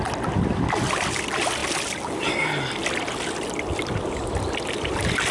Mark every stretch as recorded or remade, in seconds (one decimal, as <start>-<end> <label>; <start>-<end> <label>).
0.0-5.3 recorded